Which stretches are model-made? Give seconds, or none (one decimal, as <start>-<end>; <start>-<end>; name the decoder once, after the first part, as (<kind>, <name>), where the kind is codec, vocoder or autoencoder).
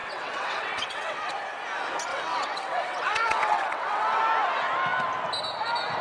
0.0-1.3 (vocoder, WaveNeXt); 2.1-4.2